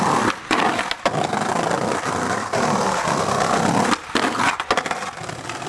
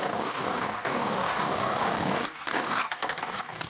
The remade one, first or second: second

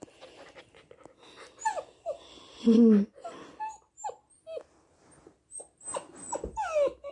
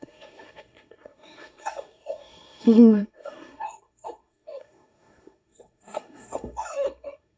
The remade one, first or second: second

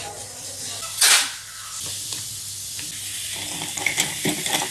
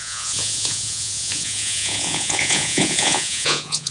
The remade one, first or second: second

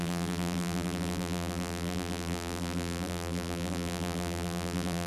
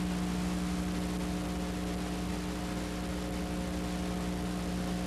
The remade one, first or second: first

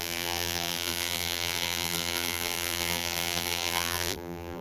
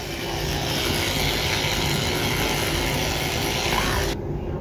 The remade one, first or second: first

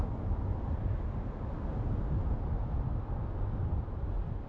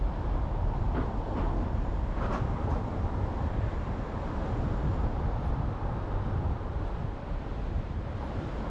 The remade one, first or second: second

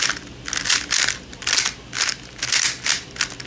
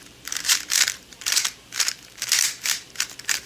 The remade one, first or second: second